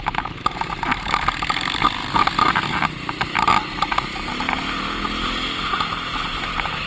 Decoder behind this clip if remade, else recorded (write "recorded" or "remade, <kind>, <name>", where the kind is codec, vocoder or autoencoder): recorded